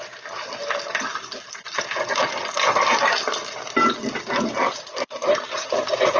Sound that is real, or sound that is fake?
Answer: real